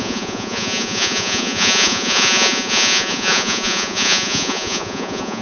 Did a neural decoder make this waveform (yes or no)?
yes